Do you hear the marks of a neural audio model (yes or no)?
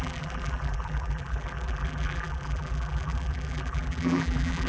yes